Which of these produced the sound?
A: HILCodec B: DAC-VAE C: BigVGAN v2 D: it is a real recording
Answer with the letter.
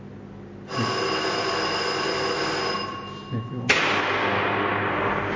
D